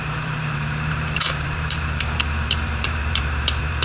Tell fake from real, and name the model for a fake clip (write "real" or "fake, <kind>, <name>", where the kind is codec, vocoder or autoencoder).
fake, vocoder, BigVGAN v2